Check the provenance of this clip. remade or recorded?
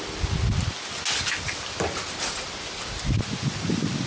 recorded